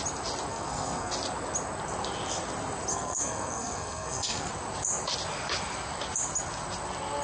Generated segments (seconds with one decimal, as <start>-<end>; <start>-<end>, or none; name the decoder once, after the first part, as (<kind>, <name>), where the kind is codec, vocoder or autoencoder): 0.5-1.1 (codec, SNAC); 2.9-4.5